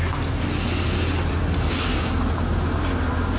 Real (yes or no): yes